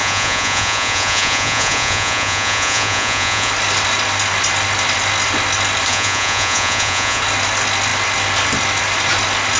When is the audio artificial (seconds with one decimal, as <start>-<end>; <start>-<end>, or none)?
0.0-3.5; 5.9-7.2